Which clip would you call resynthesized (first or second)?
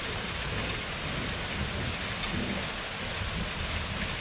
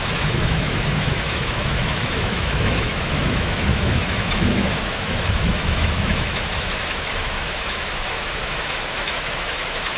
second